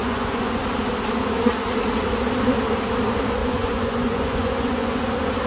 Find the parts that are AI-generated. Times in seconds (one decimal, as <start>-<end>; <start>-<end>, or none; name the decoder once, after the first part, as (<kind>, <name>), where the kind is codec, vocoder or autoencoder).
0.0-0.6 (vocoder, Vocos); 3.4-5.0